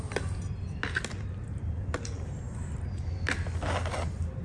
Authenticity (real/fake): real